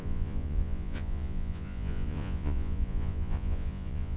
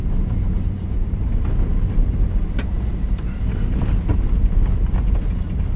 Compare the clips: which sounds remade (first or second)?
first